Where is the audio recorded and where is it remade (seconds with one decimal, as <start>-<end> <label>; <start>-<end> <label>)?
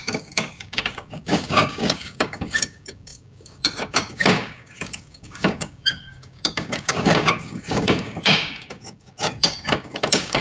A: 0.0-10.4 remade